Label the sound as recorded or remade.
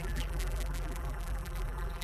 remade